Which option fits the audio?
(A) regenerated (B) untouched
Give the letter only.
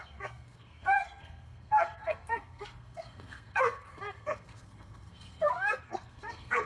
A